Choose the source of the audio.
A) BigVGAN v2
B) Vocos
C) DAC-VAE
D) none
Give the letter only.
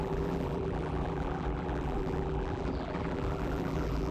A